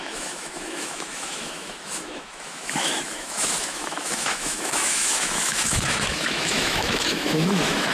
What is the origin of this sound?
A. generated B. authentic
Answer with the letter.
A